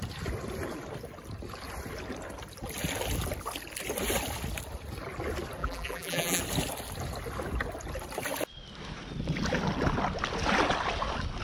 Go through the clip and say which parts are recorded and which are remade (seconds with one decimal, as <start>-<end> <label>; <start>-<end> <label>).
0.0-5.6 recorded; 5.6-6.4 remade; 6.4-11.4 recorded